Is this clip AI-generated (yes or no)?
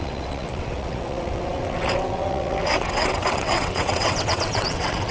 yes